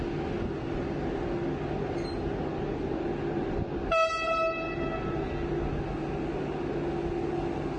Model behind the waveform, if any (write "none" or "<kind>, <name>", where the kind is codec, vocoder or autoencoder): none